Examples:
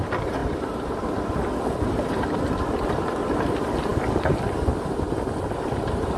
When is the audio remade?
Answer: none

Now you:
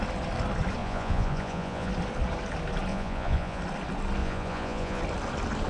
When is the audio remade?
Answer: 0.8-1.9 (vocoder, Vocos); 2.9-3.6; 4.2-5.0